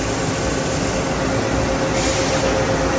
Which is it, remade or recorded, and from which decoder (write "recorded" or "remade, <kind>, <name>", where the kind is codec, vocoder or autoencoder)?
recorded